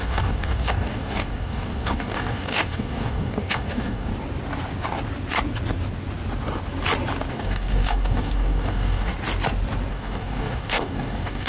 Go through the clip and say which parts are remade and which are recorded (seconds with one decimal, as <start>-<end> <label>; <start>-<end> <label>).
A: 0.0-4.1 remade; 4.1-7.3 recorded; 7.3-9.1 remade; 9.1-9.9 recorded; 9.9-11.5 remade